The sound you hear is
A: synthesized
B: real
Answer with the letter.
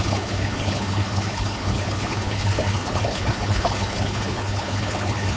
A